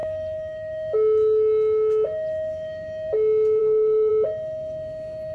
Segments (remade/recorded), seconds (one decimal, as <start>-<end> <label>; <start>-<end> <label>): 0.0-3.6 recorded; 3.6-4.1 remade; 4.1-5.3 recorded